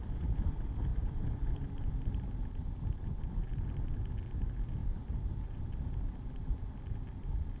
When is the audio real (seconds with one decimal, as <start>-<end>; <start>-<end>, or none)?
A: 0.0-0.9; 1.9-4.8; 5.9-7.6

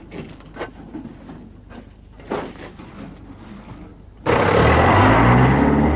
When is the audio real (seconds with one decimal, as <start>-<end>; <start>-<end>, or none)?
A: 0.0-3.9; 5.0-6.0